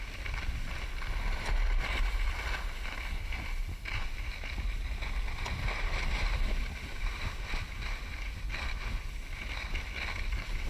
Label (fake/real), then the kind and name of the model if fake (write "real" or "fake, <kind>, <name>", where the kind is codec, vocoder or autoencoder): real